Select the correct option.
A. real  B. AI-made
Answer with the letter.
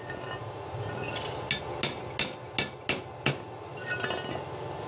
A